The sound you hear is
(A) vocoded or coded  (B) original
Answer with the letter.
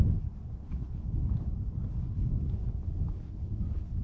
A